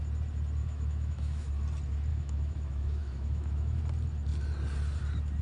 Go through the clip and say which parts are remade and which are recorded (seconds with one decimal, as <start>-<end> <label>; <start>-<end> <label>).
0.0-0.6 recorded; 0.6-1.5 remade; 1.5-2.1 recorded; 2.1-3.8 remade; 3.8-5.4 recorded